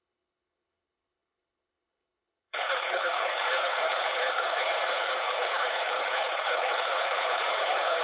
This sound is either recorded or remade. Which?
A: remade